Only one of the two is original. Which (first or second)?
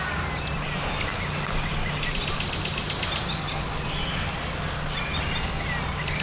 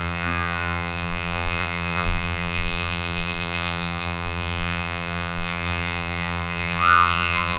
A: first